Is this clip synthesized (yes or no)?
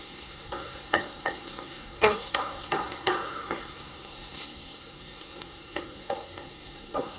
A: yes